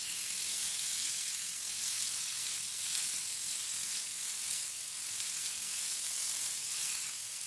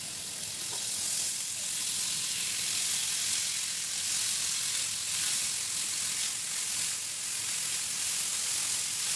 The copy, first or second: first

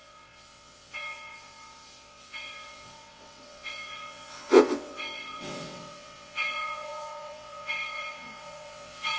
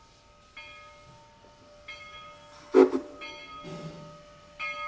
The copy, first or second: first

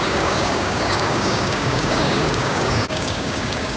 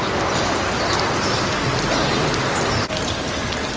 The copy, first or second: first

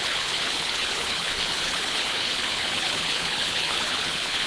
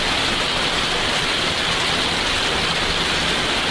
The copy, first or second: first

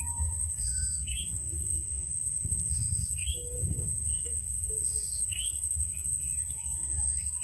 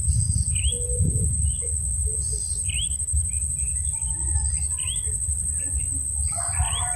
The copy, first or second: first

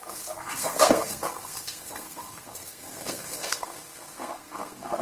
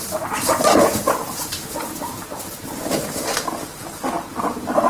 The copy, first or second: first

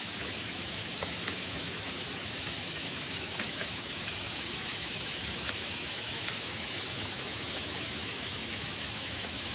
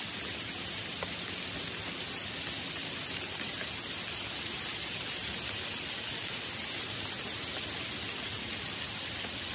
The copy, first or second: first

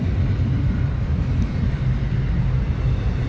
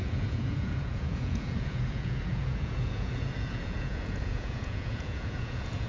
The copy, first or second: second